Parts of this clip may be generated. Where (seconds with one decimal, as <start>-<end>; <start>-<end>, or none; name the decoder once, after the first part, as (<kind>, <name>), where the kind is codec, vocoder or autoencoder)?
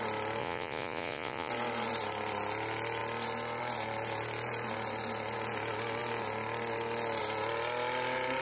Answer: 0.4-1.5 (vocoder, Vocos)